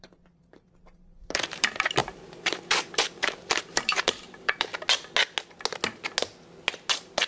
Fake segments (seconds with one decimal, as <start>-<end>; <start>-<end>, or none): 0.0-4.7